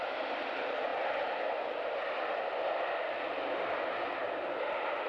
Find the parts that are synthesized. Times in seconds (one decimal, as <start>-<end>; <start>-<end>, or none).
none